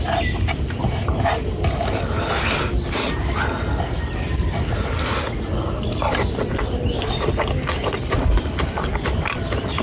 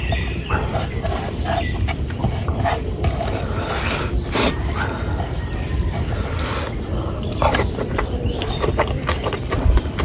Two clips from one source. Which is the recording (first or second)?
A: first